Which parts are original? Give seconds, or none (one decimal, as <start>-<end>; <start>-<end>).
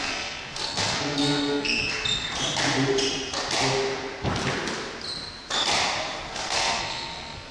1.8-6.3